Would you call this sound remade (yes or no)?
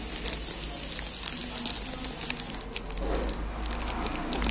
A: no